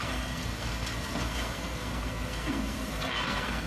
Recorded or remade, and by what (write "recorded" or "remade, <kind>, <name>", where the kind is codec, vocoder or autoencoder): remade, codec, SNAC